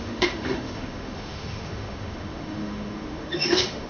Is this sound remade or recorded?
remade